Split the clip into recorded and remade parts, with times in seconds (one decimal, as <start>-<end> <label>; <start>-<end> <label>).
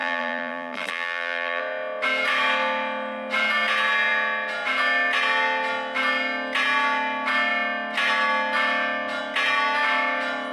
0.0-1.6 remade; 1.6-10.5 recorded